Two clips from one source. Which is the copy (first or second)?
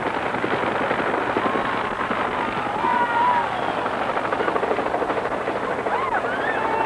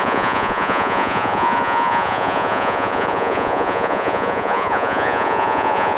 second